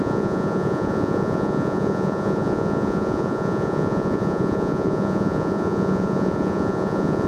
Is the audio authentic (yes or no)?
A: no